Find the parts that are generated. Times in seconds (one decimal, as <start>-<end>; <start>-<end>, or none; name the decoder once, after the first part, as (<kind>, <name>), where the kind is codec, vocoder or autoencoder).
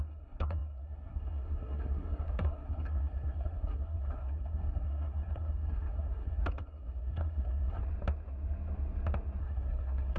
0.0-7.8 (codec, SNAC); 9.4-10.2